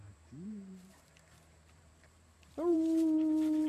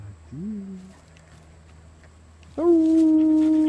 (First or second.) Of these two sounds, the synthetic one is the first